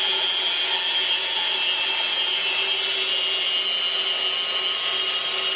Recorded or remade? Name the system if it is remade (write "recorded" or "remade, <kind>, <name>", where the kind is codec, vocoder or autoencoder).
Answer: recorded